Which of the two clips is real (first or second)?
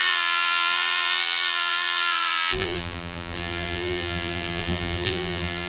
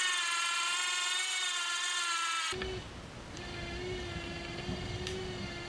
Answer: second